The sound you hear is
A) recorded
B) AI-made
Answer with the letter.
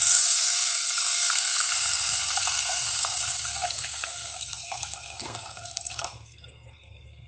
B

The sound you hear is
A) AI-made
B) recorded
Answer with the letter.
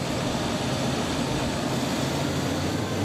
B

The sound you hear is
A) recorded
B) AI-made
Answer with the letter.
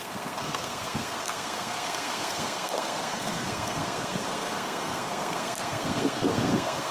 B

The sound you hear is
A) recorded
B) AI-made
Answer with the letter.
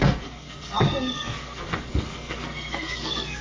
B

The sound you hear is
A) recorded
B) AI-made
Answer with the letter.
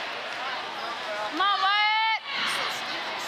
A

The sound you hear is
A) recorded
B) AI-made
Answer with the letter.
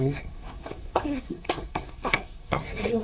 B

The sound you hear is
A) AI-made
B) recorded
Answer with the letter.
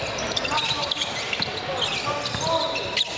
B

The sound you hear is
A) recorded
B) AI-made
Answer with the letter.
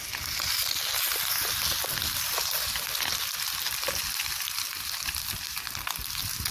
A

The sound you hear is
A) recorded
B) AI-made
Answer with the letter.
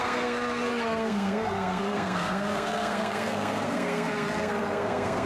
B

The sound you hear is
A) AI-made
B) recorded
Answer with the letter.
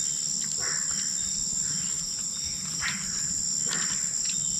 B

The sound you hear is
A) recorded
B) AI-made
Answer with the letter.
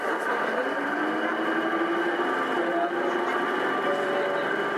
A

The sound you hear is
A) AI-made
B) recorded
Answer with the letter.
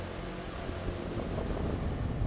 B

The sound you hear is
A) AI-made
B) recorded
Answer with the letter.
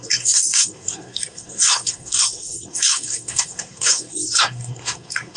A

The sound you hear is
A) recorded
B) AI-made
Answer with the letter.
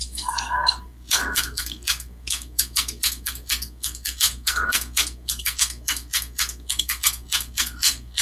B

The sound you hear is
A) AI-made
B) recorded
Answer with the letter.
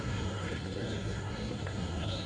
A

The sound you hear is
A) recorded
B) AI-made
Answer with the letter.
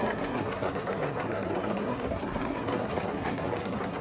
B